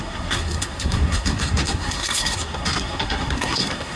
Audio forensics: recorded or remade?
remade